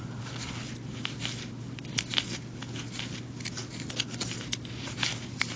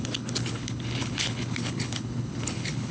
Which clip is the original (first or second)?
first